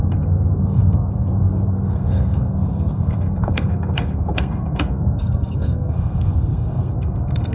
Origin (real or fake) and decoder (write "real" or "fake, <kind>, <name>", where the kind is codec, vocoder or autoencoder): fake, codec, SNAC